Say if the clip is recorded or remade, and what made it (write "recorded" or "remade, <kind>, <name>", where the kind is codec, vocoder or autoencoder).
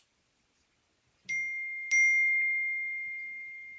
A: recorded